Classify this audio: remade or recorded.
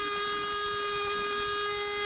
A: recorded